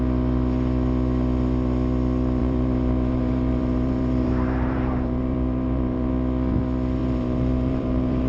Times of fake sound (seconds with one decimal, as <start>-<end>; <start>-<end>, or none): 2.4-6.1; 7.0-8.3